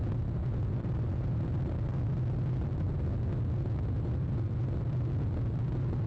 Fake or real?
real